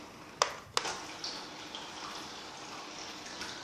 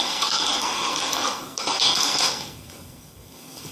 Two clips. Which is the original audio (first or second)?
first